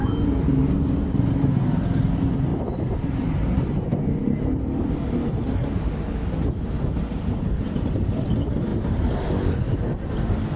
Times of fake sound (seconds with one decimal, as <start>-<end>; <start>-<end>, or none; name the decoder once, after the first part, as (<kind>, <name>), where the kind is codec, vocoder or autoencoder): 2.5-4.0 (vocoder, BigVGAN v2); 8.7-9.3